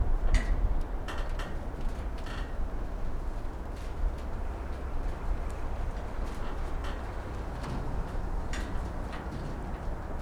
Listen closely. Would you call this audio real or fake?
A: real